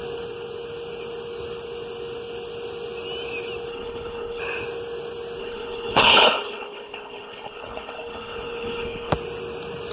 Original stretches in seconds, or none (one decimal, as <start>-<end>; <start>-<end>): 0.0-3.7; 4.4-5.4; 9.1-9.9